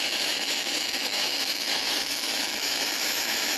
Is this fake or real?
fake